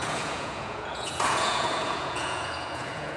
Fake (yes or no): yes